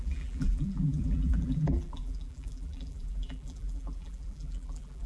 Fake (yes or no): yes